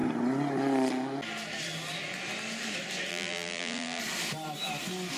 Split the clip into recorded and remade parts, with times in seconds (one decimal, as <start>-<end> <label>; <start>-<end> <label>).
0.0-3.1 recorded; 3.1-4.0 remade; 4.0-5.2 recorded